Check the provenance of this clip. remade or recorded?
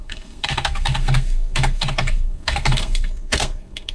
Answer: remade